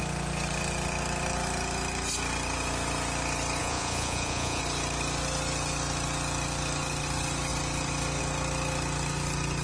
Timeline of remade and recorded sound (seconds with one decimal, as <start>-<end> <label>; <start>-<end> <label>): 0.0-3.6 recorded; 3.6-4.6 remade; 4.6-9.6 recorded